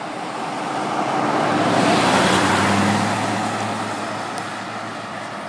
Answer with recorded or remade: recorded